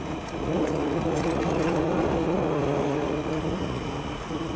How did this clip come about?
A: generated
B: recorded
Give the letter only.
A